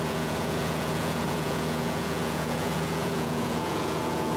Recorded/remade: remade